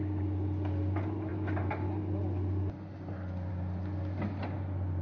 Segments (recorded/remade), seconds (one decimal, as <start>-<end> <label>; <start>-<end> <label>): 0.0-5.0 recorded